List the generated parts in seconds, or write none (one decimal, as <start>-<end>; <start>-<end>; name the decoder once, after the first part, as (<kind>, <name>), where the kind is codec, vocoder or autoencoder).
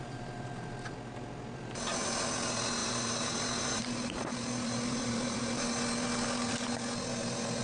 2.8-5.8 (vocoder, BigVGAN v2)